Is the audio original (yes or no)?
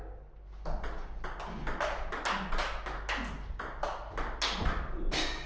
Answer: yes